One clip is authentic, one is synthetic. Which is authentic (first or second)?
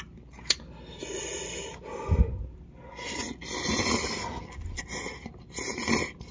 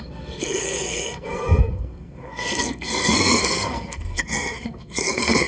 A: first